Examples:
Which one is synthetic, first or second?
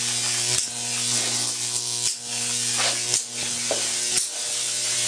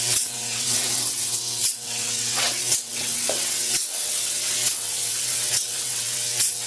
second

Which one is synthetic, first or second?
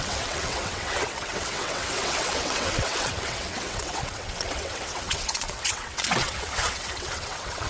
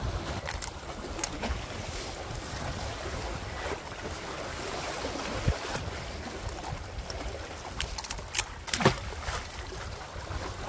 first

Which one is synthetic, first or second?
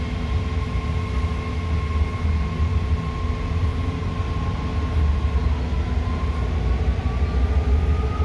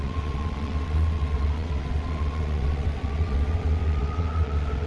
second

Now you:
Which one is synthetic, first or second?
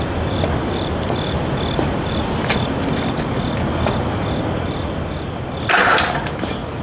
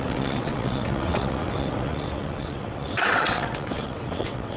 second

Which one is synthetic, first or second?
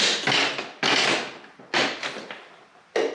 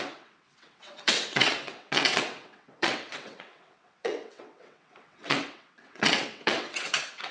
second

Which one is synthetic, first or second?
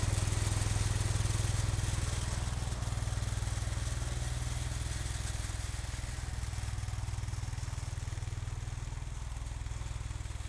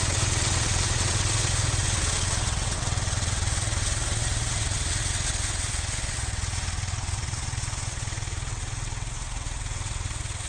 second